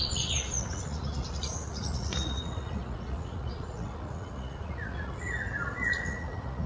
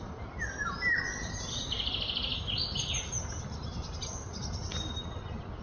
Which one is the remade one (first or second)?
first